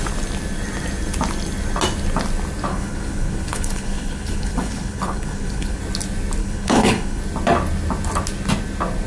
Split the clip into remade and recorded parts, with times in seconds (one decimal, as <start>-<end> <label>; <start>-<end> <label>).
0.0-2.7 recorded; 2.7-5.8 remade; 5.8-6.4 recorded; 6.4-7.2 remade; 7.2-9.1 recorded